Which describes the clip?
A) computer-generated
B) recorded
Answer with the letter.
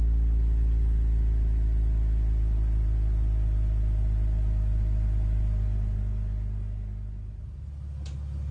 B